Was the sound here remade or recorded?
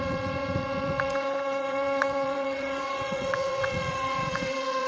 remade